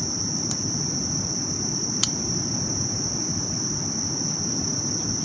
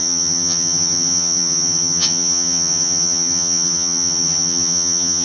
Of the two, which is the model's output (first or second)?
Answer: second